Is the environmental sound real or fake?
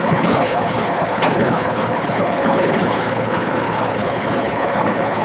fake